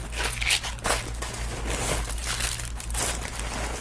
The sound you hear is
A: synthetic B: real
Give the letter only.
B